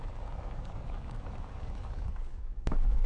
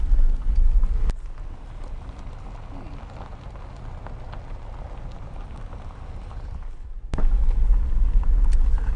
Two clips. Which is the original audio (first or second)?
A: second